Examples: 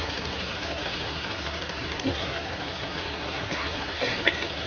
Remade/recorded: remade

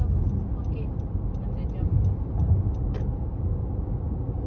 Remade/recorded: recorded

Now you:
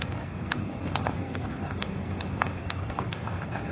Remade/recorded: remade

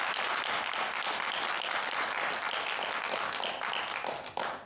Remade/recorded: recorded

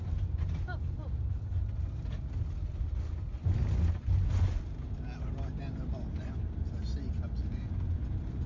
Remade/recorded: recorded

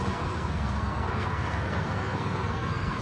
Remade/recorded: remade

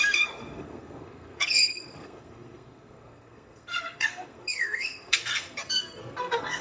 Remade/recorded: remade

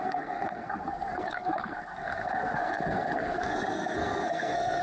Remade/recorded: remade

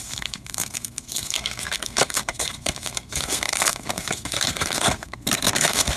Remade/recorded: remade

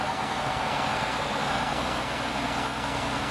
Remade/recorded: remade